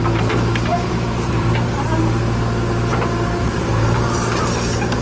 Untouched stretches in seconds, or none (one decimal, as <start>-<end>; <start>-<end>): 0.0-0.7; 1.5-2.9; 3.7-5.0